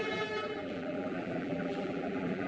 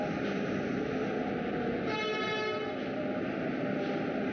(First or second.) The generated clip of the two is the first